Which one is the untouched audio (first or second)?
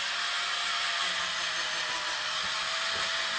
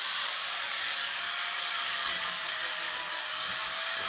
first